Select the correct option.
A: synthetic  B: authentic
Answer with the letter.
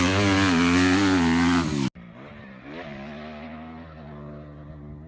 B